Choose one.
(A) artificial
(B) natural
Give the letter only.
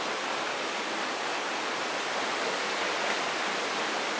B